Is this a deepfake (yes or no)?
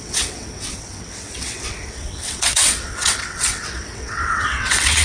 yes